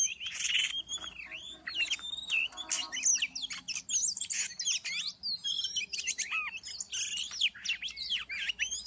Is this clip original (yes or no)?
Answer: yes